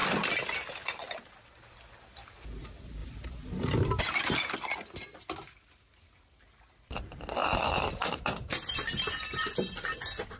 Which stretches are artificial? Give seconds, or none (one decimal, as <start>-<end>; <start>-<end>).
7.4-8.2